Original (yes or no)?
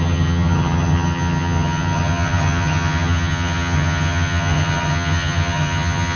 no